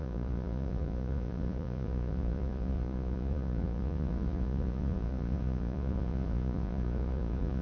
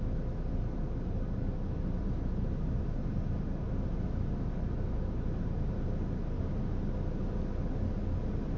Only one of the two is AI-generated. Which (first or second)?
first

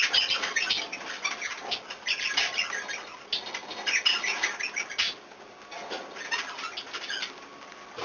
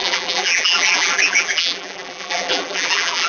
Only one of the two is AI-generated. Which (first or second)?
second